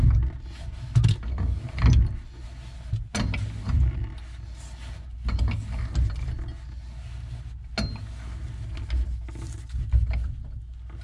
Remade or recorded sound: recorded